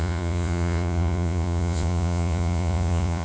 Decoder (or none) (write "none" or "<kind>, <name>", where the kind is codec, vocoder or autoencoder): vocoder, Vocos